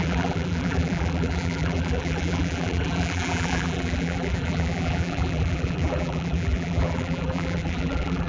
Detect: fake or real fake